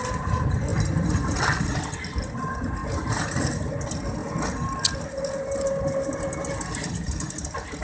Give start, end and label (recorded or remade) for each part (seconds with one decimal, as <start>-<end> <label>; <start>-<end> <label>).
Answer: 0.0-2.8 recorded; 2.8-3.7 remade; 3.7-7.8 recorded

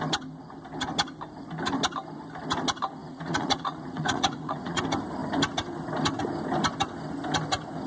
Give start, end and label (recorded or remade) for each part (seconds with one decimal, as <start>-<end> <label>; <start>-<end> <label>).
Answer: 0.0-3.0 recorded; 3.0-4.8 remade; 4.8-7.9 recorded

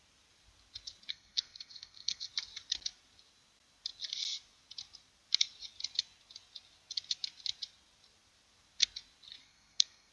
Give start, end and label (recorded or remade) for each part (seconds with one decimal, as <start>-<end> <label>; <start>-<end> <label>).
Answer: 0.0-1.1 recorded; 1.1-2.3 remade; 2.3-9.4 recorded; 9.4-10.1 remade

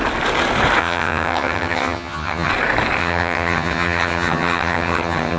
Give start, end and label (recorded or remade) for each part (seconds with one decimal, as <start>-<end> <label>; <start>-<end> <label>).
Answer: 0.0-0.8 recorded; 0.8-2.5 remade; 2.5-3.0 recorded; 3.0-5.4 remade